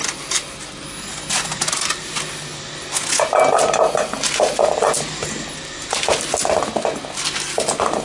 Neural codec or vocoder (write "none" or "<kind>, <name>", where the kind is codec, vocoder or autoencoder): none